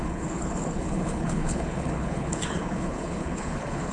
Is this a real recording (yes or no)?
no